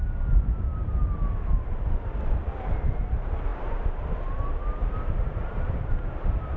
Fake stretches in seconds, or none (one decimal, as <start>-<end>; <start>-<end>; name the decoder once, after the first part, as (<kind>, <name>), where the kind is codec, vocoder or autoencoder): 0.0-1.0 (vocoder, BigVGAN v2); 1.6-6.6